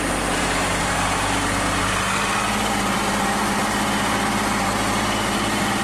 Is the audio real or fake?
fake